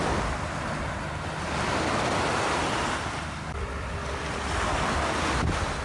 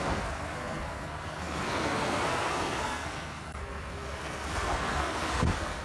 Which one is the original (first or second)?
first